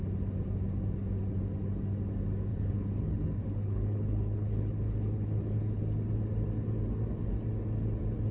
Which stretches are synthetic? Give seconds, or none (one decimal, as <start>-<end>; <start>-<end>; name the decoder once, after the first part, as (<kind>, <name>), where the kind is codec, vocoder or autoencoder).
2.5-5.8 (codec, HILCodec)